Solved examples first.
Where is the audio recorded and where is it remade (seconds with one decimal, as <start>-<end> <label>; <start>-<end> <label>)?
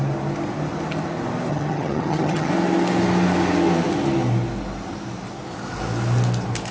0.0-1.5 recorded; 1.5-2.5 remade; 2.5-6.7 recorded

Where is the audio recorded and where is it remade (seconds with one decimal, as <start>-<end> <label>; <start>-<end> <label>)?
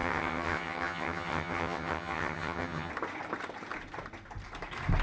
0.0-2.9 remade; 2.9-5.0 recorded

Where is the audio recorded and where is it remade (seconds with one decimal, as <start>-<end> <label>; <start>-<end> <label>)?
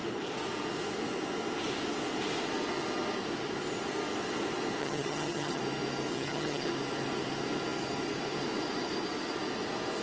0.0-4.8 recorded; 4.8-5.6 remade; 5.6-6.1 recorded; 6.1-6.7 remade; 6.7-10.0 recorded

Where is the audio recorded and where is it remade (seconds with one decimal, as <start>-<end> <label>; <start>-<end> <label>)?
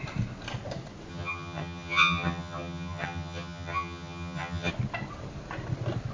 0.0-1.1 recorded; 1.1-4.7 remade; 4.7-6.1 recorded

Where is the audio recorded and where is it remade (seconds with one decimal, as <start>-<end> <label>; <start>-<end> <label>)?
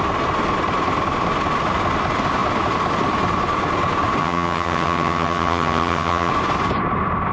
0.0-4.2 recorded; 4.2-6.3 remade; 6.3-7.3 recorded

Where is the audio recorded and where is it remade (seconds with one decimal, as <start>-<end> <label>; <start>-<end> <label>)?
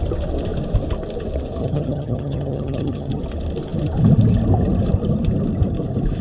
0.0-1.6 recorded; 1.6-3.2 remade; 3.2-6.2 recorded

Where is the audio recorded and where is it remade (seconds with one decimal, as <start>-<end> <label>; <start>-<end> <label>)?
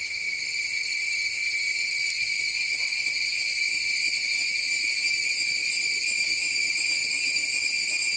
0.0-2.0 remade; 2.0-6.9 recorded; 6.9-7.4 remade; 7.4-8.2 recorded